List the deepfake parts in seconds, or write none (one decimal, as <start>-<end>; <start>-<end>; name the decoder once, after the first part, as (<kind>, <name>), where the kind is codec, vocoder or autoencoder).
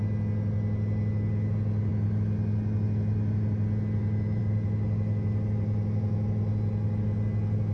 none